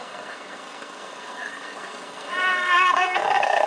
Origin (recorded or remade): remade